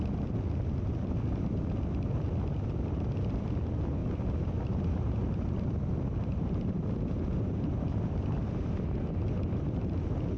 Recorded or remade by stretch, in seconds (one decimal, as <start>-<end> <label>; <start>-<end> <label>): 0.0-4.0 recorded; 4.0-9.0 remade; 9.0-10.4 recorded